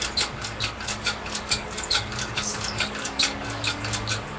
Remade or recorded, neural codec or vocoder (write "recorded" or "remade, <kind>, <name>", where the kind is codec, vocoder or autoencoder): remade, codec, DAC